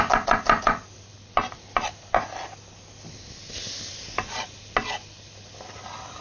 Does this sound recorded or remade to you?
recorded